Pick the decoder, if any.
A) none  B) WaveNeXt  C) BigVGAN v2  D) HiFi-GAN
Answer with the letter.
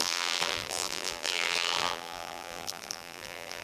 C